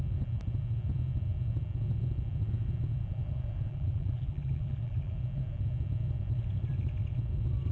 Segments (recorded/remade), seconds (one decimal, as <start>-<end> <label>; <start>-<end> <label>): 0.0-3.7 recorded; 3.7-5.1 remade; 5.1-7.7 recorded